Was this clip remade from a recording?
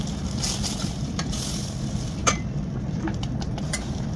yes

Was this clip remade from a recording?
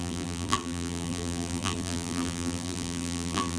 yes